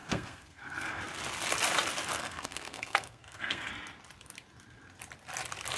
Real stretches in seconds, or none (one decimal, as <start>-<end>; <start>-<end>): 1.0-2.2; 3.7-5.8